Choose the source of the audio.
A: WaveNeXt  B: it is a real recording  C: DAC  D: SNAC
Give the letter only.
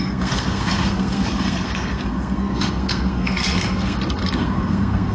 D